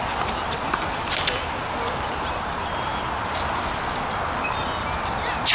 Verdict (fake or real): real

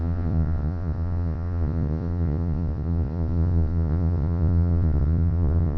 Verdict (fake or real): fake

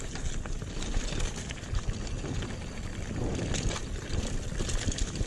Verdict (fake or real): real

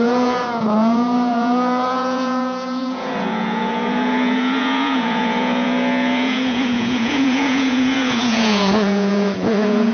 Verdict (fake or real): fake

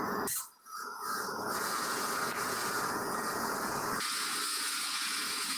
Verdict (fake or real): fake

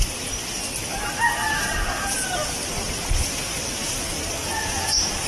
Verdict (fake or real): real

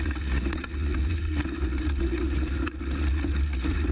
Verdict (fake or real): fake